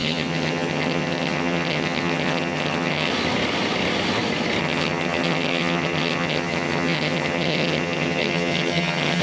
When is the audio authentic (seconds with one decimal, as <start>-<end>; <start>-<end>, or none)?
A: 3.1-4.6